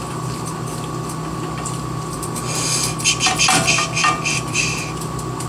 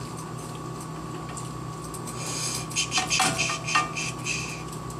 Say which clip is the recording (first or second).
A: second